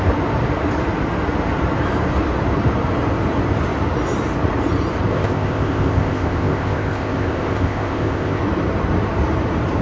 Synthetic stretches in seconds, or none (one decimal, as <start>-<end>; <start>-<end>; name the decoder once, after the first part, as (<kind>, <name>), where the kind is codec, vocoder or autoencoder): 5.1-8.4 (codec, ZipCodec)